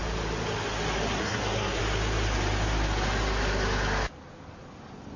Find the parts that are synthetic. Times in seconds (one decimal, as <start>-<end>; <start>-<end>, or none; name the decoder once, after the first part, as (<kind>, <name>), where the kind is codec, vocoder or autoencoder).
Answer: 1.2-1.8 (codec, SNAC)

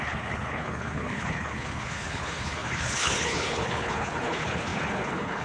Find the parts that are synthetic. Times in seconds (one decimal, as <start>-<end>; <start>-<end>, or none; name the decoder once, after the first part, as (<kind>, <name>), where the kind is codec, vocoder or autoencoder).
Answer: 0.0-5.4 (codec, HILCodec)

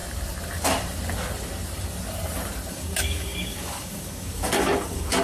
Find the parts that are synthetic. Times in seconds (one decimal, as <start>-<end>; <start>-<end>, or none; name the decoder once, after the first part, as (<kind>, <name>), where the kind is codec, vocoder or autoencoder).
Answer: 2.7-5.2 (codec, DAC)

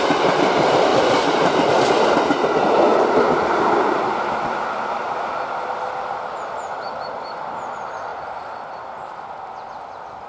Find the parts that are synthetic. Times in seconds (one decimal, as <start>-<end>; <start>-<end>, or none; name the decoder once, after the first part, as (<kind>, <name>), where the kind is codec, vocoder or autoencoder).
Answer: 0.9-1.7 (vocoder, BigVGAN v2); 8.1-9.3